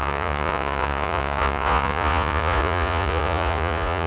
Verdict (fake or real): fake